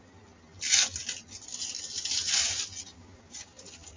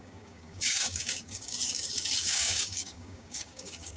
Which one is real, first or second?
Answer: first